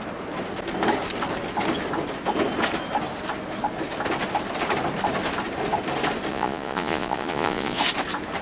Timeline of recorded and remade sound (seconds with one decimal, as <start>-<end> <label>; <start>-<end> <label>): 0.0-6.3 recorded; 6.3-7.8 remade; 7.8-8.4 recorded